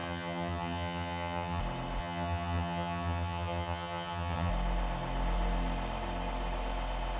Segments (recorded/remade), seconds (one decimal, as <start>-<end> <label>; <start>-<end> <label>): 0.0-1.6 remade; 1.6-2.0 recorded; 2.0-4.5 remade; 4.5-7.2 recorded